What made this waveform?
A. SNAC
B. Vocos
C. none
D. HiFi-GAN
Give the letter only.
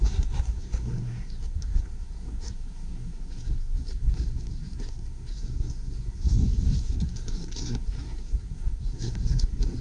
A